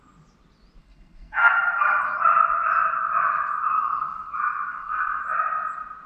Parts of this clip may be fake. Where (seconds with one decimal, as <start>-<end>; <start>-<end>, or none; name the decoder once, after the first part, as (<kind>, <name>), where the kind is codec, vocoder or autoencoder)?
0.8-2.0 (codec, SNAC); 3.7-4.3; 4.7-5.2